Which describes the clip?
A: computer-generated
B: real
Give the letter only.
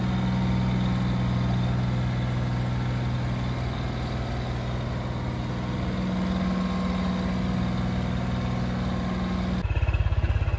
B